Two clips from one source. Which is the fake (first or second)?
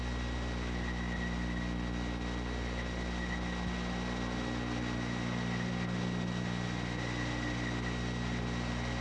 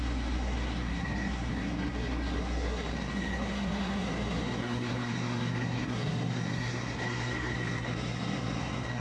second